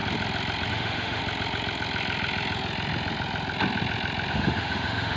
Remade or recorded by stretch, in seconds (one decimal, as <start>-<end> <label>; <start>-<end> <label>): 0.0-0.7 recorded; 0.7-1.2 remade; 1.2-4.3 recorded; 4.3-5.2 remade